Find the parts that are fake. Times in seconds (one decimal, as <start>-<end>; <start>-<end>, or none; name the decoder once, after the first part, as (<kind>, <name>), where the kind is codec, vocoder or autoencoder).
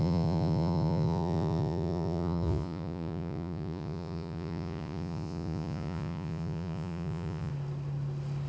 0.0-7.5 (vocoder, Vocos)